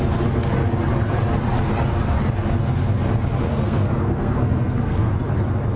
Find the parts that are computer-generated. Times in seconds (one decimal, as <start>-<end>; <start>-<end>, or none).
3.4-5.1